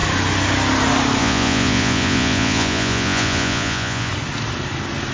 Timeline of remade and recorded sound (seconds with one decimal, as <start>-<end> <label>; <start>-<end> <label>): 0.0-1.2 recorded; 1.2-4.1 remade; 4.1-5.1 recorded